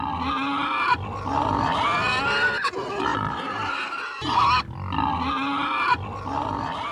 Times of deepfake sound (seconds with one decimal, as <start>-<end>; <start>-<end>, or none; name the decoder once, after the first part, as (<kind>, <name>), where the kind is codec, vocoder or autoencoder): 3.1-4.4 (vocoder, BigVGAN v2)